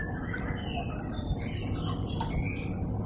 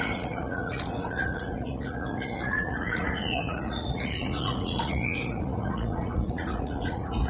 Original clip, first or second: first